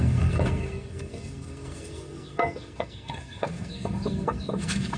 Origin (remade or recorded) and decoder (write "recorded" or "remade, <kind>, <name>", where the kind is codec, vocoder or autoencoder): remade, codec, SNAC